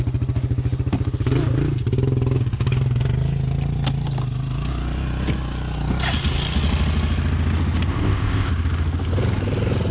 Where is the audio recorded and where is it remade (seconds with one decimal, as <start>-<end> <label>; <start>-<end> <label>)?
0.0-7.9 recorded; 7.9-8.5 remade; 8.5-9.9 recorded